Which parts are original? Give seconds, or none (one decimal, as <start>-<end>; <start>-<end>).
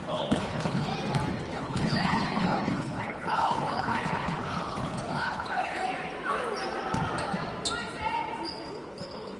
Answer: 0.9-1.5; 5.8-8.7